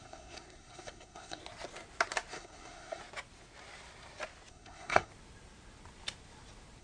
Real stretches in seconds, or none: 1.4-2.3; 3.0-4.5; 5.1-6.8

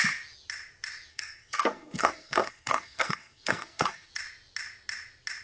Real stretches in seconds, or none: 0.0-1.1; 4.1-5.4

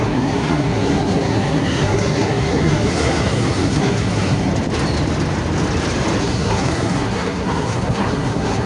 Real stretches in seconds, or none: 4.5-6.2

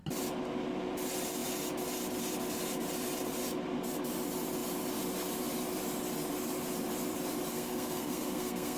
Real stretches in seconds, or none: 0.0-7.5

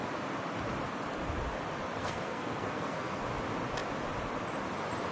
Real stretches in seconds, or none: 0.0-2.0; 3.2-5.1

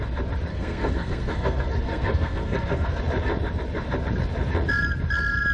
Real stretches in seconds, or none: 0.0-0.5; 3.0-5.5

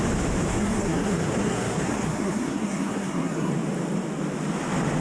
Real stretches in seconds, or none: 0.0-0.5; 3.5-5.0

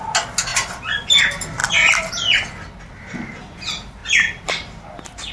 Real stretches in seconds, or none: 0.0-5.3